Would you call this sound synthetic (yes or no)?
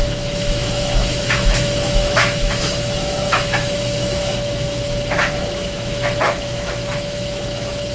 yes